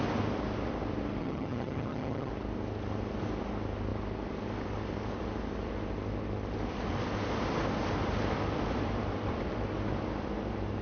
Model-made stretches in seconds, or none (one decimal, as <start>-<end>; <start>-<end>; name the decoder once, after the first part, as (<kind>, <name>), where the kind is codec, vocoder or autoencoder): 1.2-2.3 (vocoder, HiFi-GAN)